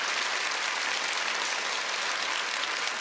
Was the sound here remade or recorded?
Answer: recorded